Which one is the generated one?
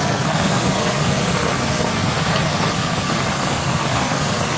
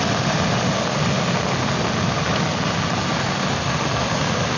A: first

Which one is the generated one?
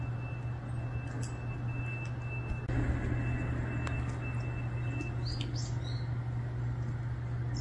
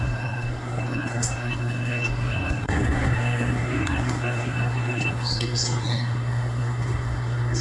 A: second